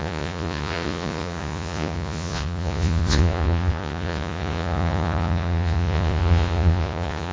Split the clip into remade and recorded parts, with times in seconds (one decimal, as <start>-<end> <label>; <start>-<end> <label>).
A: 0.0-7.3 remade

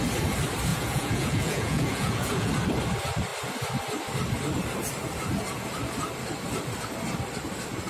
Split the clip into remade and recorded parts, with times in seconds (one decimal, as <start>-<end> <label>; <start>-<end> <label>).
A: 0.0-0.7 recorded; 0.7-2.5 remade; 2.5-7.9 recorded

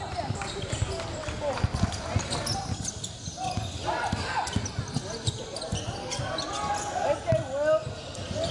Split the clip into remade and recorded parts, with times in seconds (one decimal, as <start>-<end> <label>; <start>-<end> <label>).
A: 0.0-8.5 recorded

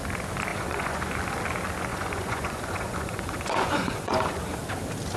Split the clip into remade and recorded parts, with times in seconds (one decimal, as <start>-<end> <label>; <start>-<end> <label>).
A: 0.0-0.5 recorded; 0.5-1.1 remade; 1.1-1.9 recorded; 1.9-4.4 remade; 4.4-5.2 recorded